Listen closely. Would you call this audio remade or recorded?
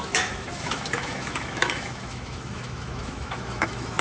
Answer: remade